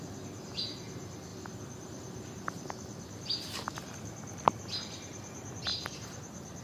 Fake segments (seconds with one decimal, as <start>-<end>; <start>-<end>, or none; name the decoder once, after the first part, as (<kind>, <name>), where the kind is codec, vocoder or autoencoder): 5.7-6.6 (vocoder, BigVGAN v2)